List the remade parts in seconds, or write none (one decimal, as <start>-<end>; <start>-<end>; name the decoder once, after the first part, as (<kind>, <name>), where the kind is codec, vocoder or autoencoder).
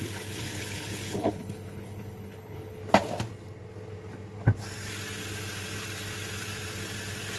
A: 0.0-2.8 (codec, HILCodec)